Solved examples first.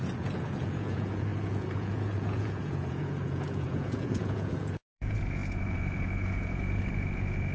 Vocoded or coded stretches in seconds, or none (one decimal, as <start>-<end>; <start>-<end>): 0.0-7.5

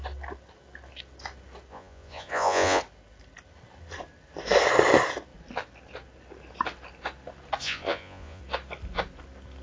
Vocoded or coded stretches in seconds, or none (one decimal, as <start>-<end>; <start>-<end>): 1.7-2.8; 7.6-8.4

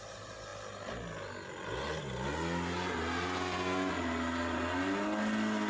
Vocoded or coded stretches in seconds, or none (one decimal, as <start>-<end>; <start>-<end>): none

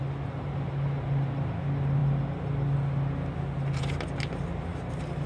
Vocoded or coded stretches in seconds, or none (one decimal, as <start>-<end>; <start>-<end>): none

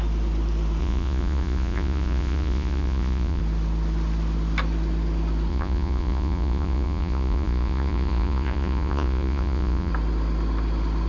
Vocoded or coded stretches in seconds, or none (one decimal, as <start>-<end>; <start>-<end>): 0.8-3.4; 5.5-9.9

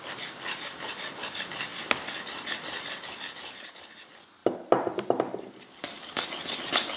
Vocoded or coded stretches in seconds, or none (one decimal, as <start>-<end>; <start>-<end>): none